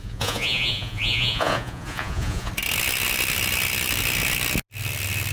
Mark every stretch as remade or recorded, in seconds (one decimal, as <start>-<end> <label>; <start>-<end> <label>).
0.0-2.5 remade; 2.5-5.3 recorded